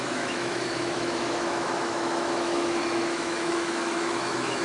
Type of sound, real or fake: fake